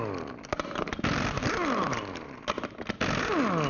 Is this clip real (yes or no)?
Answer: yes